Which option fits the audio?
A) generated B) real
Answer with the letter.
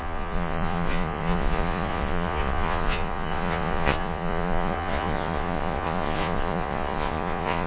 A